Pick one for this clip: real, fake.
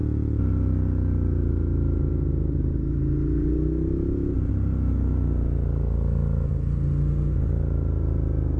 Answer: real